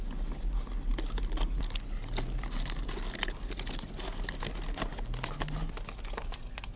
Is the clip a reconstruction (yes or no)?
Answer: no